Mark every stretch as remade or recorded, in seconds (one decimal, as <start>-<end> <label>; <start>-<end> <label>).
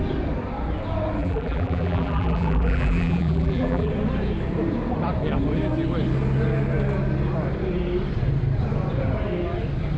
0.0-1.2 recorded; 1.2-3.9 remade; 3.9-10.0 recorded